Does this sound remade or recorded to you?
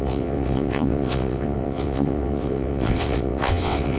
remade